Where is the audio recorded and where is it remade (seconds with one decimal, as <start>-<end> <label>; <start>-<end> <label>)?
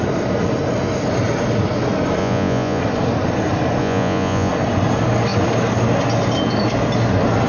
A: 0.0-2.2 recorded; 2.2-2.8 remade; 2.8-3.8 recorded; 3.8-4.5 remade; 4.5-7.5 recorded